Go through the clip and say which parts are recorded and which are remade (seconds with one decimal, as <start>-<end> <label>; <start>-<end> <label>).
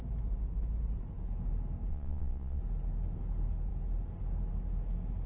0.0-1.9 recorded; 1.9-2.6 remade; 2.6-5.3 recorded